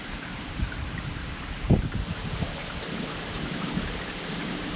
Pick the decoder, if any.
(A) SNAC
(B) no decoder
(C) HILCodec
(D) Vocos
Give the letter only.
B